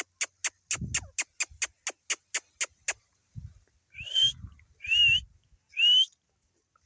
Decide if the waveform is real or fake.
real